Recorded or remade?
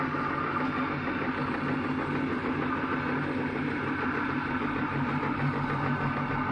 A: recorded